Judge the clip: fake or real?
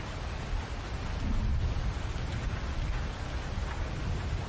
real